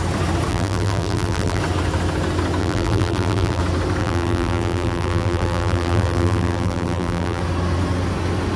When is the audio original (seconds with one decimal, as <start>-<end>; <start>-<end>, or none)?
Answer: 0.0-0.5; 1.6-2.6; 3.6-4.0; 7.4-8.6